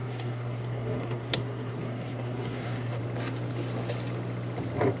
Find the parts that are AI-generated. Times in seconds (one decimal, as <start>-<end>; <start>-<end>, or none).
0.0-3.0